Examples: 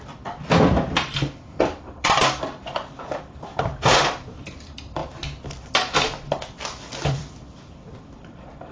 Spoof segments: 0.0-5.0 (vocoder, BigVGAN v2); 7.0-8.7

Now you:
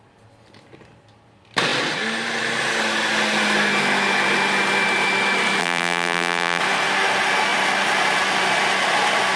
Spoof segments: 5.6-6.6 (vocoder, BigVGAN v2)

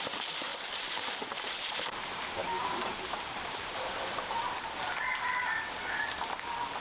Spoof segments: 0.5-4.6 (vocoder, BigVGAN v2)

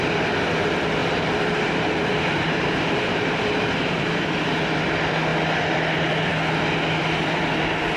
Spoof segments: 1.0-4.2 (vocoder, BigVGAN v2)